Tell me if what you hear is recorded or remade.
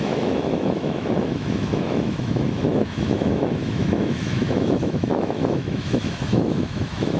remade